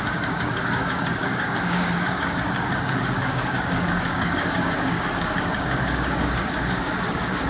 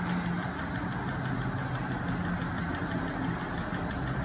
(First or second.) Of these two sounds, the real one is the second